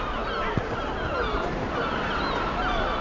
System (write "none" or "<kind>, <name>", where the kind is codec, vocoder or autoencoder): none